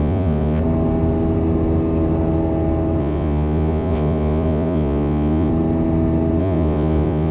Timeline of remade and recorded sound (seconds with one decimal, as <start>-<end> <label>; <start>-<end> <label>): 0.0-0.6 remade; 0.6-3.0 recorded; 3.0-5.5 remade; 5.5-6.4 recorded; 6.4-7.3 remade